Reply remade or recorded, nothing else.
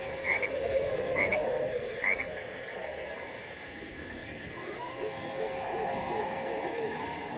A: remade